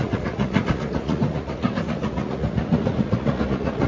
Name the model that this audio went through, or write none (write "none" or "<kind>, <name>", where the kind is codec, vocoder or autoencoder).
vocoder, Vocos